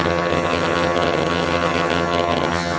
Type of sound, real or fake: fake